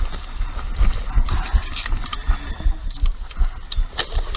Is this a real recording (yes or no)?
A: yes